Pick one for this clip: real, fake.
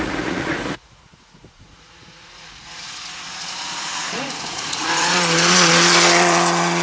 fake